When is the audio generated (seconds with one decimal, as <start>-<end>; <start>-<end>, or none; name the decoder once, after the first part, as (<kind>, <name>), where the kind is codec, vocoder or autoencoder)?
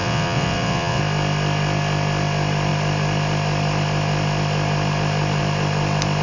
0.0-1.0 (vocoder, WaveNeXt)